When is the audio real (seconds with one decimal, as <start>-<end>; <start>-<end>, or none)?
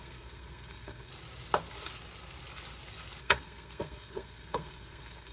1.1-3.2